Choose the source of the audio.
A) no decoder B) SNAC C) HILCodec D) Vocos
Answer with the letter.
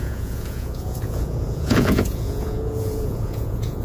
D